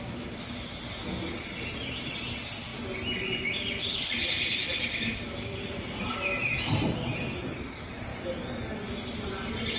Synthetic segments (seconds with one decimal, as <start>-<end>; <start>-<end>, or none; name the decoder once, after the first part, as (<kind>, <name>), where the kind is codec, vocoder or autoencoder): none